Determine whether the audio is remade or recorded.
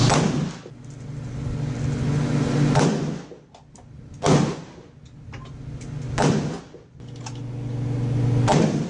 recorded